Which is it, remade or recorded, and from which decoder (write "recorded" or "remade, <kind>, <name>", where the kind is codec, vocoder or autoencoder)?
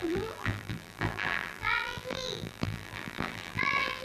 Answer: remade, vocoder, BigVGAN v2